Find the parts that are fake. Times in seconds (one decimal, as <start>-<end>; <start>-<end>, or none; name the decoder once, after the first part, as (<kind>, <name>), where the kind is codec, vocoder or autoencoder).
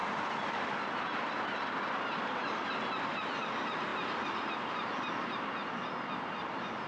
1.2-3.9 (vocoder, BigVGAN v2)